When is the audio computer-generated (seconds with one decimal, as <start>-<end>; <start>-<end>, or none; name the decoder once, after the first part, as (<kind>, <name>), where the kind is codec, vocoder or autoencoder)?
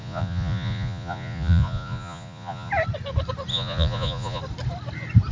0.0-2.7 (vocoder, Vocos); 3.5-4.4